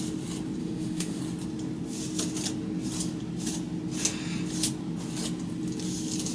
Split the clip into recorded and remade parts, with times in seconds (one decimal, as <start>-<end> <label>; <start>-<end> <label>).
0.0-0.6 recorded; 0.6-1.2 remade; 1.2-6.3 recorded